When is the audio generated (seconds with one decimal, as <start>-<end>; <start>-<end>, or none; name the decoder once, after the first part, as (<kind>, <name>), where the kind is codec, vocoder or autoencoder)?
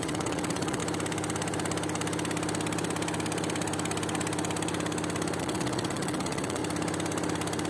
0.0-0.8 (vocoder, WaveNeXt); 5.4-6.6